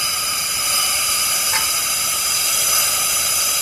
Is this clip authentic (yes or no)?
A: no